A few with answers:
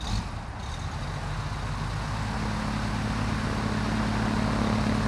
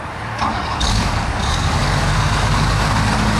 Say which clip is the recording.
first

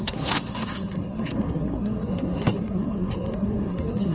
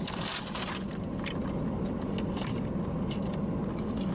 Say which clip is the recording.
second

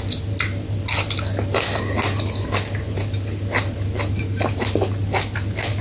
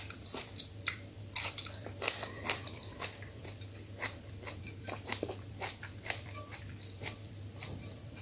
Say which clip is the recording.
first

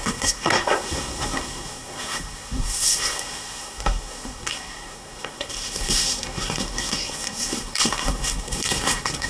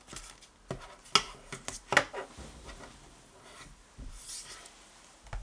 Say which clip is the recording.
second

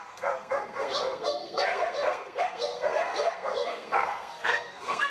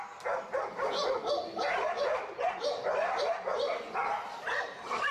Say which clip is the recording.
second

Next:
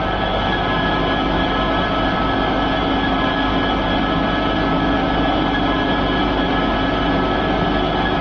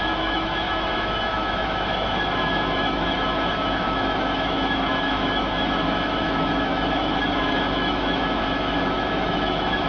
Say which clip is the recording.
first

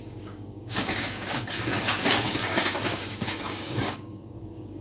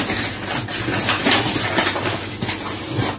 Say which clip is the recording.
second